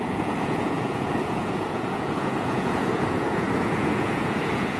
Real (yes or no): no